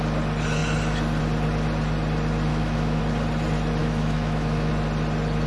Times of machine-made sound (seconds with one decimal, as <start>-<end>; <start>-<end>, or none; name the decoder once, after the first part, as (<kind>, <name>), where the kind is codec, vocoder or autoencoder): 2.5-3.0 (autoencoder, DAC-VAE); 3.8-4.7